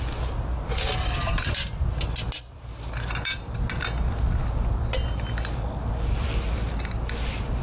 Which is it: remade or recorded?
recorded